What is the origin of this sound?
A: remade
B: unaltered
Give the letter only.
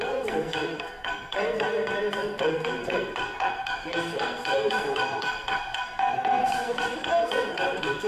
A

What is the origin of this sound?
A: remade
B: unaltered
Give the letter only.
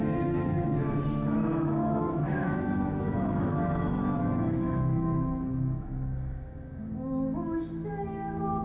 A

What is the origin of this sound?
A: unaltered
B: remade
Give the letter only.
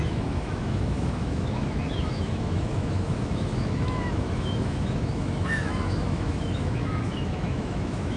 B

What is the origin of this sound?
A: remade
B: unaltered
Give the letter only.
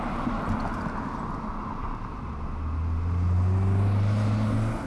B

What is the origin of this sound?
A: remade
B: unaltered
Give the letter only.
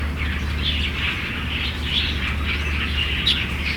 B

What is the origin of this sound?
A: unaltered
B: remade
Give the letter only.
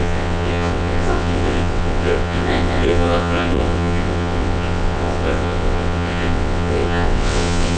B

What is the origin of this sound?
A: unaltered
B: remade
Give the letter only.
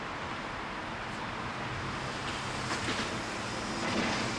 A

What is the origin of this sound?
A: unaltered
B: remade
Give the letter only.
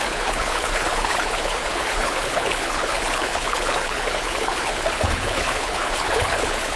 B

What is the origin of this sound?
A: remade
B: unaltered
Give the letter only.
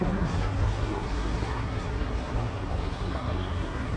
A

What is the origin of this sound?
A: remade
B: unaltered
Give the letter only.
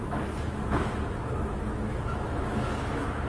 A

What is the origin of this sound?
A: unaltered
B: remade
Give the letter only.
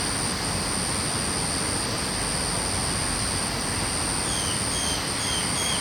A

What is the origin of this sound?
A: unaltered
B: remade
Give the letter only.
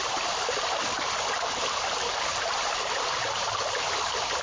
A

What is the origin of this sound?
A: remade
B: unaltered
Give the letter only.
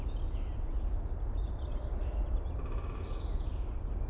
B